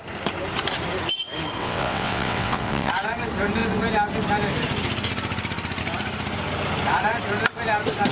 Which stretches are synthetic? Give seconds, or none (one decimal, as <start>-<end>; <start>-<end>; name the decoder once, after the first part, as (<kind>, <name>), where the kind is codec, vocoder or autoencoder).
1.6-2.9 (vocoder, WaveNeXt)